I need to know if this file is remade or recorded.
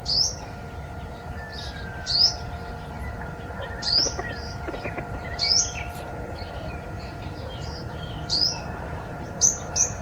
remade